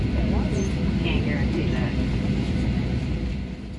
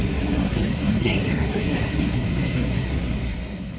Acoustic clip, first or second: first